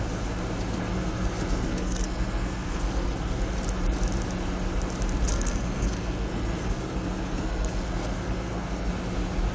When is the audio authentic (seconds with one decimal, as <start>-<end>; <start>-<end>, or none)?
0.0-0.8; 3.4-5.3; 8.9-9.5